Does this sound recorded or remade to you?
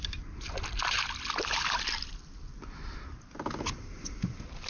recorded